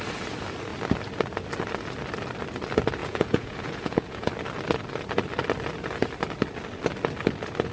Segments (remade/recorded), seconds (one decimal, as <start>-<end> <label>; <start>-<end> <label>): 0.0-3.0 recorded; 3.0-4.3 remade; 4.3-7.7 recorded